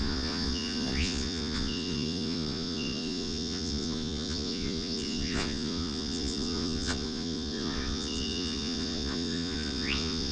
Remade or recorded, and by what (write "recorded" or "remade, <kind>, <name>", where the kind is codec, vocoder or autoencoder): remade, vocoder, Vocos